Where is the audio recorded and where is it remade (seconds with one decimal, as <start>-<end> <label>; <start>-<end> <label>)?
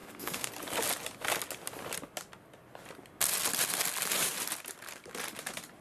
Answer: 0.0-0.5 remade; 0.5-5.8 recorded